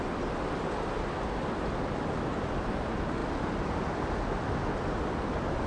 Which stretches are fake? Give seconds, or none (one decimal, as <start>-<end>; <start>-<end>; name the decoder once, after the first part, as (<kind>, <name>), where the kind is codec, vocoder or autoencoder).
none